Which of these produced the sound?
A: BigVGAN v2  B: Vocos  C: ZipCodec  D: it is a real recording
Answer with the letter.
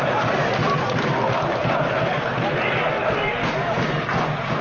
D